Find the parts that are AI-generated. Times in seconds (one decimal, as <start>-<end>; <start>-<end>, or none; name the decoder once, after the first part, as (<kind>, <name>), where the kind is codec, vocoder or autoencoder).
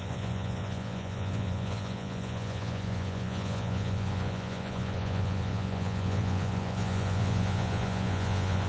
0.0-8.7 (vocoder, Vocos)